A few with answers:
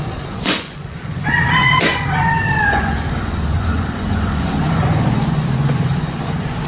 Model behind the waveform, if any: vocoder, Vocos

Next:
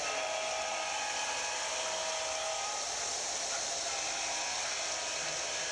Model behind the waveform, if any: none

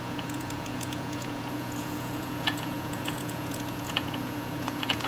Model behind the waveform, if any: vocoder, Vocos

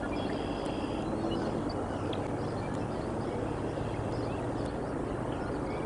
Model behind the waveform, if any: none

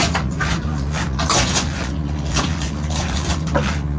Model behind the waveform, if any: vocoder, Vocos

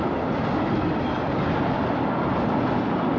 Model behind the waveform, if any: none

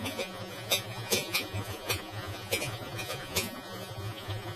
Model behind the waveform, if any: vocoder, Vocos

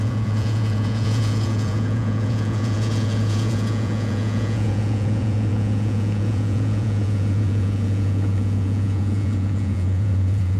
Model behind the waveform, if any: vocoder, Vocos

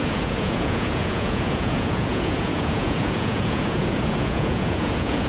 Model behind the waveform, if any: vocoder, Vocos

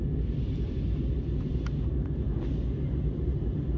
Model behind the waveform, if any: none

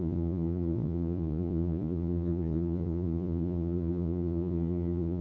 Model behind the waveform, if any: vocoder, Vocos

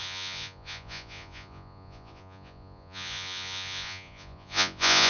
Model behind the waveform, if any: vocoder, Vocos